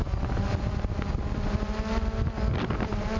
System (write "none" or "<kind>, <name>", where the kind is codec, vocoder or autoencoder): none